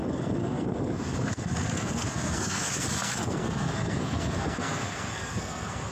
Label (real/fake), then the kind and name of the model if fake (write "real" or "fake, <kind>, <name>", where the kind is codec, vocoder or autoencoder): fake, codec, SNAC